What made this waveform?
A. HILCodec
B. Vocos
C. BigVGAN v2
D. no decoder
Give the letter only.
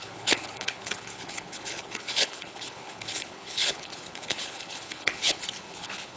A